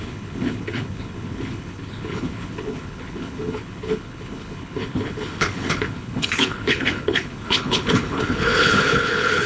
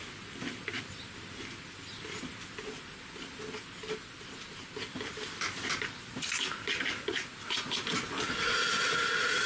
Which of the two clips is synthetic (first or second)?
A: first